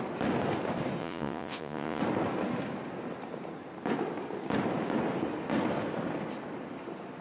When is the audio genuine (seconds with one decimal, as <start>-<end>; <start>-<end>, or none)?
0.0-1.0; 2.0-7.2